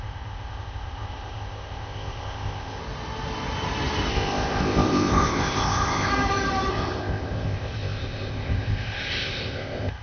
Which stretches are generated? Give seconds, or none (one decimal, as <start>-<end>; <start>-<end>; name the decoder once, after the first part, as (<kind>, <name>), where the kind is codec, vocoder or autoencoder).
0.0-2.8 (codec, ZipCodec); 4.1-6.1; 6.7-10.0

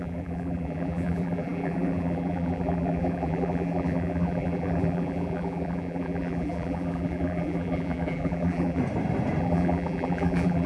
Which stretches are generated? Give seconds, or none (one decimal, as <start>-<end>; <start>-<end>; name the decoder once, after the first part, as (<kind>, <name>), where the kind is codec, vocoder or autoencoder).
0.0-8.8 (vocoder, BigVGAN v2); 9.4-10.7